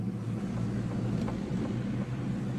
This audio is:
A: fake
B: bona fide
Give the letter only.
B